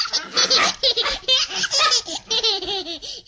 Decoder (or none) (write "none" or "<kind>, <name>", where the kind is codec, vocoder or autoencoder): none